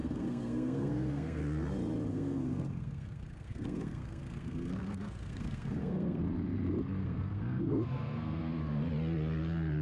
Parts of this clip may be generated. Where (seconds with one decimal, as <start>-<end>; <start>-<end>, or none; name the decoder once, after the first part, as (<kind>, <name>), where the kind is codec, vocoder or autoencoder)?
0.0-1.4 (codec, SNAC); 2.1-6.2; 7.0-8.4